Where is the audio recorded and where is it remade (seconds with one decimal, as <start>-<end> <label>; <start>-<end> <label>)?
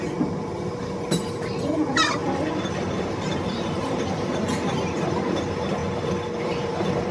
0.0-2.2 remade; 2.2-3.0 recorded; 3.0-5.8 remade; 5.8-6.4 recorded; 6.4-7.1 remade